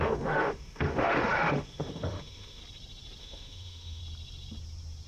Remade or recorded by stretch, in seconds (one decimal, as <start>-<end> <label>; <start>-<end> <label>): 0.0-2.6 remade; 2.6-3.2 recorded; 3.2-4.0 remade; 4.0-5.1 recorded